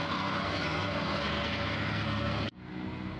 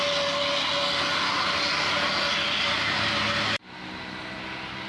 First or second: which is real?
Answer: second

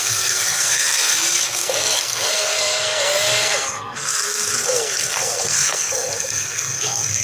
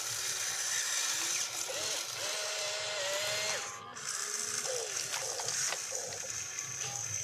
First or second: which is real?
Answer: second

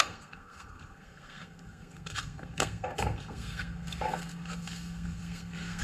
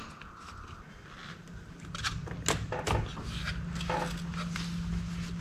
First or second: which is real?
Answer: second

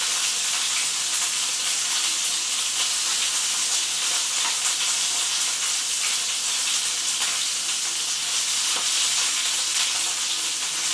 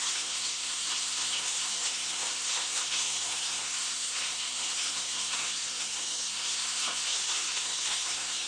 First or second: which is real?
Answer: first